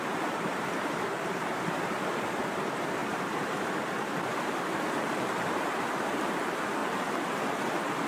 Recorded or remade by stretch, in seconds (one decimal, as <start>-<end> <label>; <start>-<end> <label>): 0.0-6.8 remade; 6.8-7.6 recorded; 7.6-8.1 remade